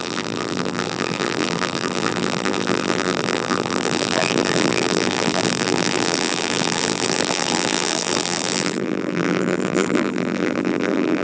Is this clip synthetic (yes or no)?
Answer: yes